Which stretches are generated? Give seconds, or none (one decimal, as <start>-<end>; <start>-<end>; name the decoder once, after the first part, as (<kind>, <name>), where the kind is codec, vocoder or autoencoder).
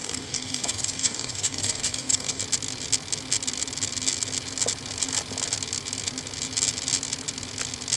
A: 0.0-2.4 (codec, DAC)